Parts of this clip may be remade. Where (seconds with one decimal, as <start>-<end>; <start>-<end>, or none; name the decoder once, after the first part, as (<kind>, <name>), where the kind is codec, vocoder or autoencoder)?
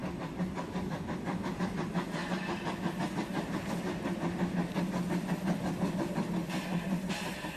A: 0.0-1.5 (vocoder, BigVGAN v2); 6.4-7.1